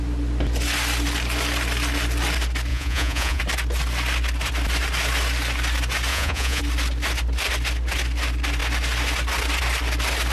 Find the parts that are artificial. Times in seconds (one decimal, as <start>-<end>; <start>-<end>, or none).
2.7-3.4; 6.1-6.6